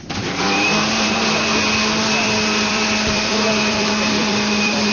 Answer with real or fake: fake